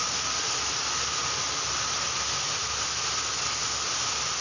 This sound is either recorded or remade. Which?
recorded